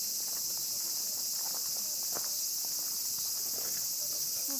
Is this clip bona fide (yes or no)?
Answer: yes